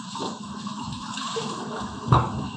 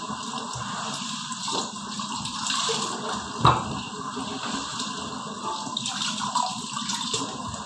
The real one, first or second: second